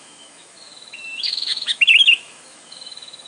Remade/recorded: remade